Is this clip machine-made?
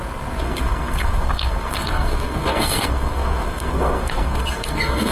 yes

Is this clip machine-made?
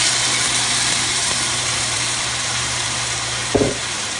yes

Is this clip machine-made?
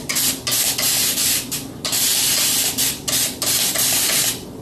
no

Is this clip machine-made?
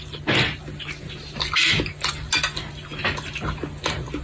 no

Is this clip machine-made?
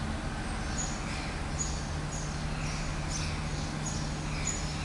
no